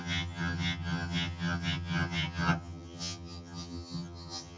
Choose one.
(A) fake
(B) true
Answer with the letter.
A